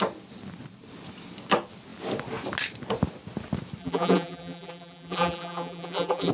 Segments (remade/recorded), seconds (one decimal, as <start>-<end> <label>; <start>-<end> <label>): 0.0-3.8 recorded; 3.8-6.3 remade